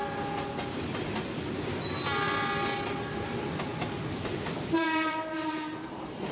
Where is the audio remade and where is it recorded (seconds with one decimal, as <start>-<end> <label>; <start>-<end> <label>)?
0.0-3.7 recorded; 3.7-5.5 remade; 5.5-6.3 recorded

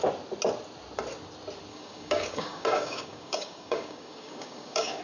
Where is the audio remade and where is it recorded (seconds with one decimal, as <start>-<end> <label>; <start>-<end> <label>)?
0.0-1.7 recorded; 1.7-5.0 remade

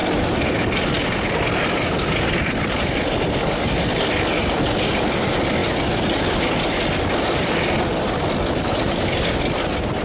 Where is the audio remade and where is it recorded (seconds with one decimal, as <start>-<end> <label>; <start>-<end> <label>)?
0.0-10.0 recorded

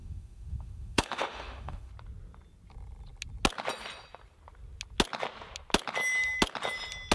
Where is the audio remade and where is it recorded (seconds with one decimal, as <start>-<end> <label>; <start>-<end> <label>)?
0.0-1.9 remade; 1.9-7.1 recorded